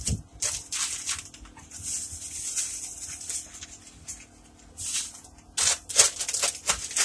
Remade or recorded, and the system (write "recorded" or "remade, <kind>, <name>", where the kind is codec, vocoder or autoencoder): recorded